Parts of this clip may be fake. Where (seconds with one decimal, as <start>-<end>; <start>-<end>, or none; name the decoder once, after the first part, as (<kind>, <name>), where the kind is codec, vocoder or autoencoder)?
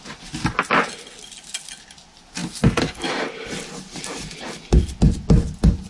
none